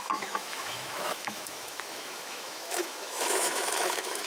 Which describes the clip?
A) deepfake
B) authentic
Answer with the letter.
A